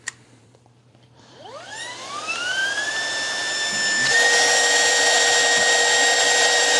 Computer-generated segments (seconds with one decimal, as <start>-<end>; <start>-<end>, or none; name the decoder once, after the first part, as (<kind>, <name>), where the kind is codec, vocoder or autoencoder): 0.0-2.6 (vocoder, BigVGAN v2); 6.2-6.8